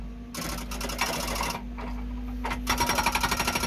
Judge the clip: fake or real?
real